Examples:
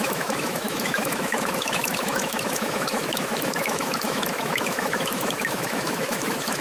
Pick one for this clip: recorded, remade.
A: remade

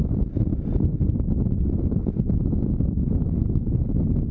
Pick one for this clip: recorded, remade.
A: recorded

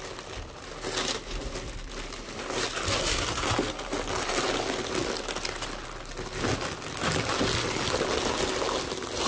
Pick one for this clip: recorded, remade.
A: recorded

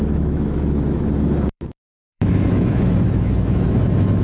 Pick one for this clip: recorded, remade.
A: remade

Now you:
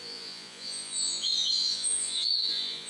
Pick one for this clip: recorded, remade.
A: remade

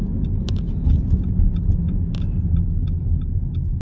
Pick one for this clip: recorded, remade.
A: recorded